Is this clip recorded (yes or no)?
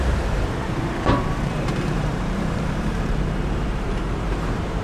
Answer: no